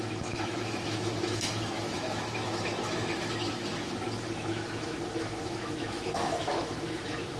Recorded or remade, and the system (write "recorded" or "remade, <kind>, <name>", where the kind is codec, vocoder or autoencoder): remade, autoencoder, DAC-VAE